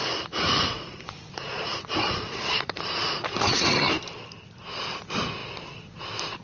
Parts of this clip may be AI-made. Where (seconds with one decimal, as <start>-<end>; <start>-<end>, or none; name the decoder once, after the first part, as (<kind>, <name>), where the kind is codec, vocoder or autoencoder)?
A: 0.0-3.8 (vocoder, Vocos)